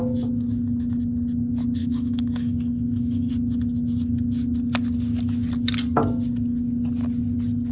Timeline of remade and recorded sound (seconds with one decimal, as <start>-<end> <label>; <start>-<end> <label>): 0.0-1.8 recorded; 1.8-3.3 remade; 3.3-7.7 recorded